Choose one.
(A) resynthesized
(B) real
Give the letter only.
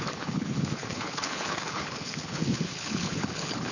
A